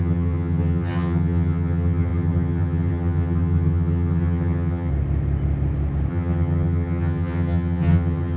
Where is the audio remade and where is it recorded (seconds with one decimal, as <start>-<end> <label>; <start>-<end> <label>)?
0.0-4.9 remade; 4.9-6.1 recorded; 6.1-8.4 remade